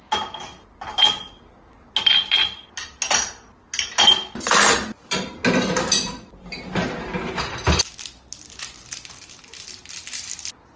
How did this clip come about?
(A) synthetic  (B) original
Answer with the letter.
B